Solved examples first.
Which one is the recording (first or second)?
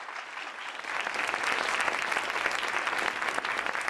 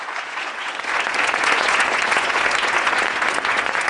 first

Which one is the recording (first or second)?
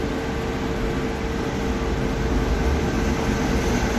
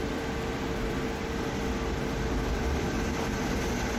first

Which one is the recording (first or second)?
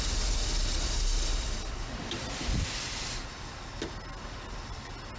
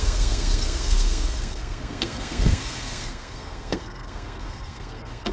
first